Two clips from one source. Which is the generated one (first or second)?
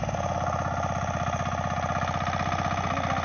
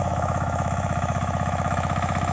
second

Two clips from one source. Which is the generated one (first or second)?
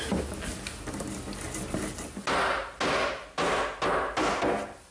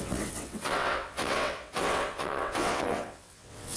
second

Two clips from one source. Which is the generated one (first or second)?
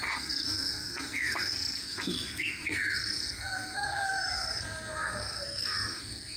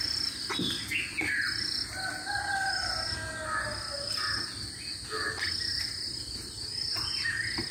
first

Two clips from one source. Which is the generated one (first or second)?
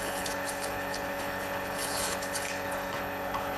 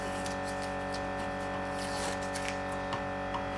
first